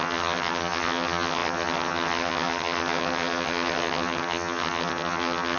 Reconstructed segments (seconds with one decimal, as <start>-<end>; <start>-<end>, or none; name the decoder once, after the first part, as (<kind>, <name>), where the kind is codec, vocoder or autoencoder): 0.0-5.6 (vocoder, HiFi-GAN)